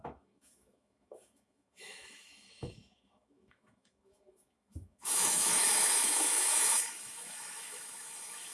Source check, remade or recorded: remade